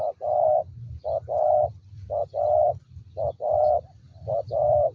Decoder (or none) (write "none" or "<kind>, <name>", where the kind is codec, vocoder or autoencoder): none